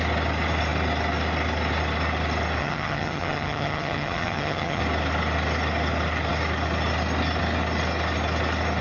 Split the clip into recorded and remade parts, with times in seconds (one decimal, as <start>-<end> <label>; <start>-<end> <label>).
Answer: 0.0-2.6 recorded; 2.6-4.8 remade; 4.8-8.8 recorded